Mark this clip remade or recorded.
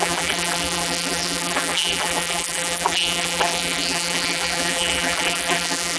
remade